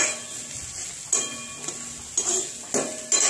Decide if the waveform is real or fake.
real